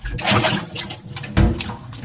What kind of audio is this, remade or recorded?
recorded